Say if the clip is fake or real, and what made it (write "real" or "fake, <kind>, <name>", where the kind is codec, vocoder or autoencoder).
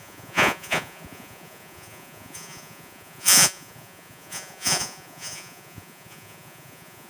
fake, vocoder, Vocos